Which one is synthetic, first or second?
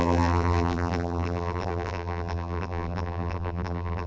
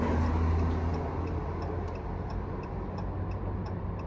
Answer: first